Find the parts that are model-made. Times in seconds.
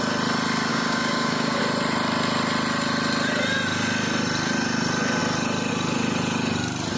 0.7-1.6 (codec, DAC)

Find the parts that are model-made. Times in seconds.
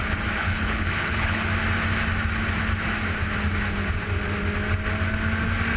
0.4-1.5 (codec, HILCodec)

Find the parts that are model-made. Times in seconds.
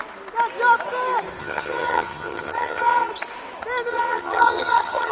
1.4-3.1 (vocoder, HiFi-GAN); 3.9-5.1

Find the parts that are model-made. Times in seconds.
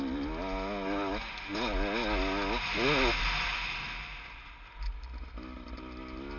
none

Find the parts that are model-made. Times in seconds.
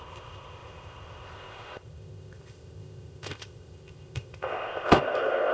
0.0-5.5 (codec, ZipCodec)